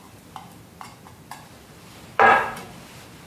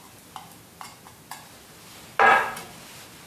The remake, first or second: first